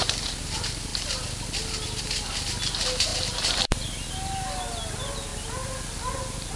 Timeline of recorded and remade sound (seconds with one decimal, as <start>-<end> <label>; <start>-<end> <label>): 0.0-3.1 recorded; 3.1-4.1 remade; 4.1-6.6 recorded